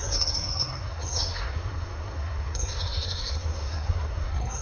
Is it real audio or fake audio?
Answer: fake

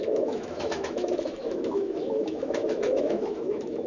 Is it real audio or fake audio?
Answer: fake